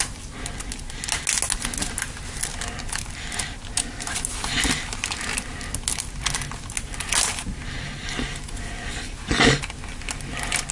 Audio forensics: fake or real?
real